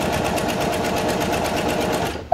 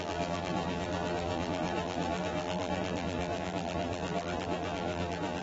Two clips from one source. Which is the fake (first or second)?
second